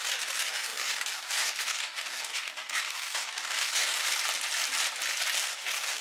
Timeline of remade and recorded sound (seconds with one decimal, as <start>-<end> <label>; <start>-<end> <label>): 0.0-4.0 remade; 4.0-5.4 recorded; 5.4-6.0 remade